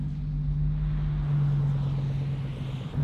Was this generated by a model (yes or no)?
no